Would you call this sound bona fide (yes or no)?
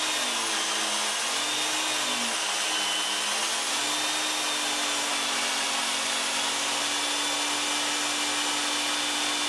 yes